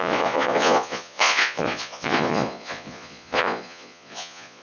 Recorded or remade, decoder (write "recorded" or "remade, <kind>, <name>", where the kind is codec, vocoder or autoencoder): remade, vocoder, Vocos